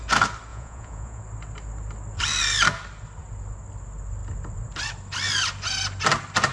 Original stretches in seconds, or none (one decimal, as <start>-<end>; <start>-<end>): 0.0-0.5; 1.2-6.5